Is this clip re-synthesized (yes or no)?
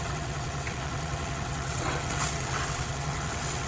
yes